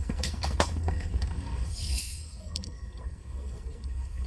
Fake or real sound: fake